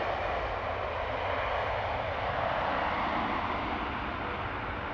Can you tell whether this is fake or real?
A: real